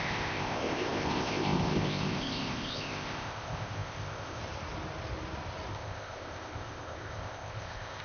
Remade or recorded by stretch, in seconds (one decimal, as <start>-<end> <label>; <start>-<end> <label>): 0.0-4.4 remade; 4.4-5.7 recorded; 5.7-8.0 remade

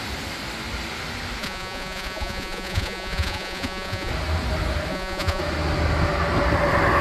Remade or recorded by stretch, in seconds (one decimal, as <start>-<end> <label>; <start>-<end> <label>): 0.0-1.4 recorded; 1.4-4.1 remade; 4.1-4.9 recorded; 4.9-5.4 remade; 5.4-7.0 recorded

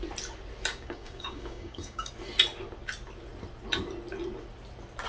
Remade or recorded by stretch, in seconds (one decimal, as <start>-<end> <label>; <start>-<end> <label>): 0.0-0.7 recorded; 0.7-2.1 remade; 2.1-5.1 recorded

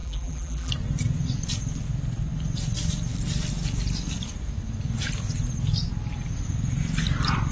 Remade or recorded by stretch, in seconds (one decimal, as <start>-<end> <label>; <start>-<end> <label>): 0.0-0.7 remade; 0.7-7.5 recorded

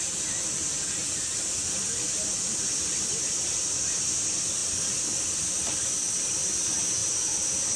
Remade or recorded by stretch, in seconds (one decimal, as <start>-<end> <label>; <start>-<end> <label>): 0.0-4.6 recorded; 4.6-5.3 remade; 5.3-7.0 recorded; 7.0-7.8 remade

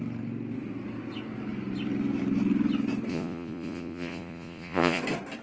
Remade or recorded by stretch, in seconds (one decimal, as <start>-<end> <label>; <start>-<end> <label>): 0.0-3.1 recorded; 3.1-5.0 remade; 5.0-5.4 recorded